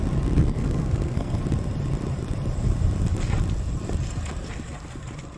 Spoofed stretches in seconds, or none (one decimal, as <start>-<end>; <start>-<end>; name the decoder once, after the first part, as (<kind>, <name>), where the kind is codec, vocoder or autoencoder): 0.4-1.4 (codec, SNAC)